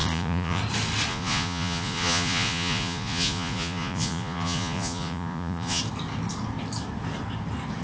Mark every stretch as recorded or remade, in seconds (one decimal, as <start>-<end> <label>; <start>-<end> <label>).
0.0-0.6 remade; 0.6-1.1 recorded; 1.1-5.8 remade; 5.8-7.8 recorded